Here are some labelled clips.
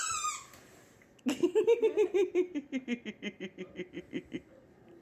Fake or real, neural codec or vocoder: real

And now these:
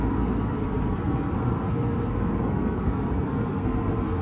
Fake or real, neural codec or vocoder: fake, codec, SNAC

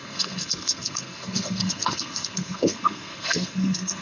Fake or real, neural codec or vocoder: fake, codec, SNAC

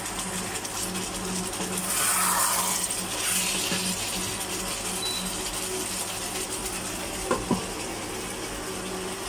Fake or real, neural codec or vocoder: real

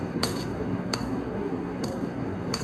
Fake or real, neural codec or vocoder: fake, codec, SNAC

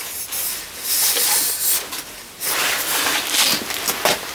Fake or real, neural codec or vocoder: real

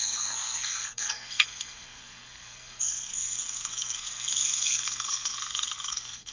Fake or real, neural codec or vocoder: fake, codec, SNAC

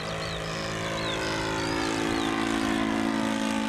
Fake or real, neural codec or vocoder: real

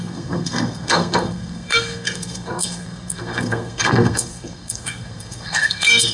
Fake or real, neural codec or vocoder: fake, codec, SNAC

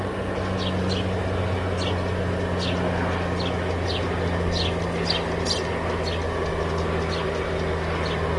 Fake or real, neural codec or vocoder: real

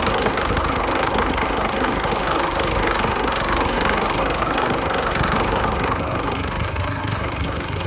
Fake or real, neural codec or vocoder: fake, codec, SNAC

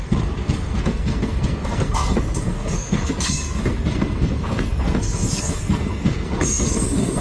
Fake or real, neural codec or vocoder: fake, codec, SNAC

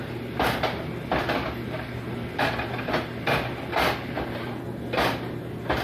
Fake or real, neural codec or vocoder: real